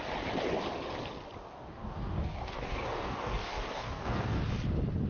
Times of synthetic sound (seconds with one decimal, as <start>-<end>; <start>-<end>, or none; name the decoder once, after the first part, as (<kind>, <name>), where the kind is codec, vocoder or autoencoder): 1.5-4.4 (codec, DAC)